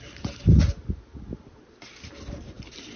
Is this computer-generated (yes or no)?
no